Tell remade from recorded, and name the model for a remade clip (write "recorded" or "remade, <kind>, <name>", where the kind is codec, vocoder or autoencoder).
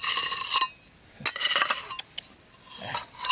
recorded